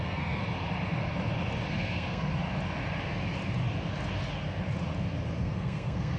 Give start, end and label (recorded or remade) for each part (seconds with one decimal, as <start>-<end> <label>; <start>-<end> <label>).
0.0-0.4 remade; 0.4-1.7 recorded; 1.7-2.3 remade; 2.3-5.4 recorded; 5.4-6.2 remade